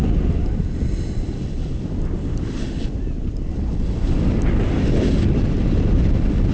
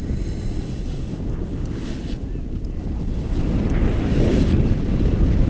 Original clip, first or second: second